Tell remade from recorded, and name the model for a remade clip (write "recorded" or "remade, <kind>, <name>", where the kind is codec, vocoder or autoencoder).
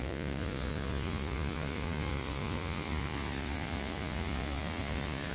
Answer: remade, vocoder, Vocos